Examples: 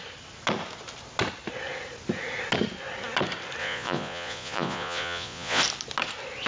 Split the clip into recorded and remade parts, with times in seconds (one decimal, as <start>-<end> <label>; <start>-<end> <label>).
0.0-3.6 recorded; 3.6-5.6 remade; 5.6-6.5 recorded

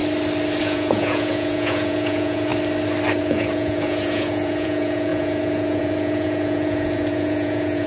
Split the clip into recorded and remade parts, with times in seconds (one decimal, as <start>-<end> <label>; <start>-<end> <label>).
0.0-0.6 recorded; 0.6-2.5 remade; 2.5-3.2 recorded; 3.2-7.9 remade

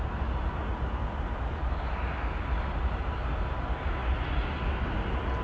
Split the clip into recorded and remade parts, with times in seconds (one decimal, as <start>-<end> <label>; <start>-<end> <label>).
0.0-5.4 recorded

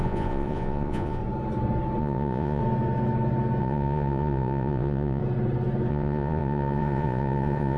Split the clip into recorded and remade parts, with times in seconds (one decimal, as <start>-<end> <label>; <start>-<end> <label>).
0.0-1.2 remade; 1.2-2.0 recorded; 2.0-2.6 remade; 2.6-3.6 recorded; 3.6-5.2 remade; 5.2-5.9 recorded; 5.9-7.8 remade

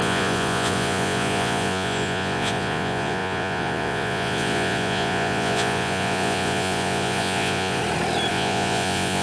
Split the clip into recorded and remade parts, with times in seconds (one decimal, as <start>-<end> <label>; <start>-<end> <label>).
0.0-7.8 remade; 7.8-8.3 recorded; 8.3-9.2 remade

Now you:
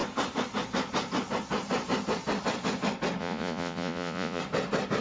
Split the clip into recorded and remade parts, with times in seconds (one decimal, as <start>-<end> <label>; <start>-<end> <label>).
0.0-3.2 recorded; 3.2-4.4 remade; 4.4-5.0 recorded